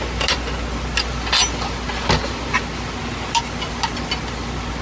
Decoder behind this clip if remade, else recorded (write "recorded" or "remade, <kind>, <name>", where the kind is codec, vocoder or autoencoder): recorded